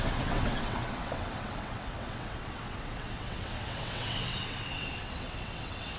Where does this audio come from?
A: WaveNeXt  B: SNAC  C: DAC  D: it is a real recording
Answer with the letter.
A